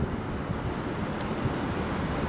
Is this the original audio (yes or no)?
yes